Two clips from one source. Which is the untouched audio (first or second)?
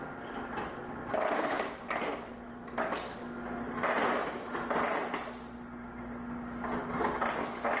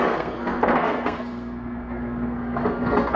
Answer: first